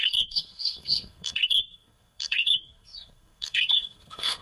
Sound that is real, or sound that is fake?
fake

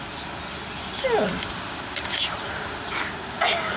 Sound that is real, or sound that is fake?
real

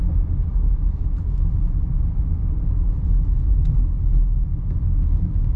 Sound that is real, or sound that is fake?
real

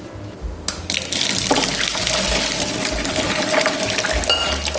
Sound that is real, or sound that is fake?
real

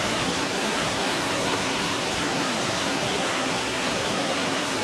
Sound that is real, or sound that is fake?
fake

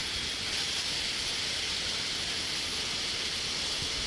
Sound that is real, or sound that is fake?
real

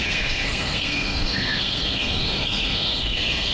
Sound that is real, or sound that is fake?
fake